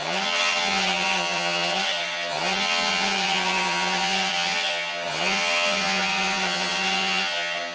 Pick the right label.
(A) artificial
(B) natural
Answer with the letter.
A